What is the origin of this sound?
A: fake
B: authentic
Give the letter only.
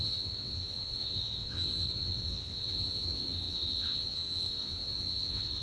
A